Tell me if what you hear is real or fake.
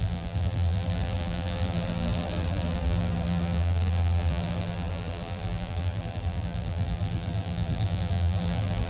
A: fake